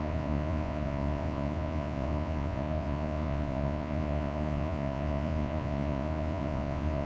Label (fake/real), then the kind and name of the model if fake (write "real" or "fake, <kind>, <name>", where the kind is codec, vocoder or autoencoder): fake, vocoder, Vocos